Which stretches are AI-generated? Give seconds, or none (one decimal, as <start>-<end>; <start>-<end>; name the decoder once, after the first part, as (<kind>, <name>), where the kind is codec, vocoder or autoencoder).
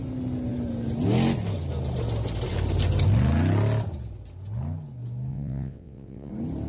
5.3-6.3 (vocoder, WaveNeXt)